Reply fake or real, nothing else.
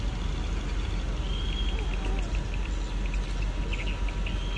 real